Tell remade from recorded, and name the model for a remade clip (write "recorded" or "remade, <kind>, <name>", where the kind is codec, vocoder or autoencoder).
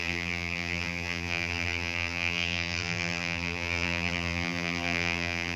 remade, vocoder, BigVGAN v2